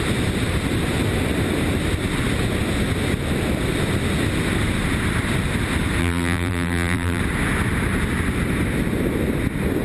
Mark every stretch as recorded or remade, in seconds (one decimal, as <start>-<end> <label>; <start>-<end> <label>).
0.0-6.0 recorded; 6.0-7.2 remade; 7.2-9.8 recorded